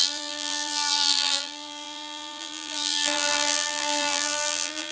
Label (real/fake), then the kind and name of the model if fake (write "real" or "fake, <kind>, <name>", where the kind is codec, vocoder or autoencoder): fake, vocoder, BigVGAN v2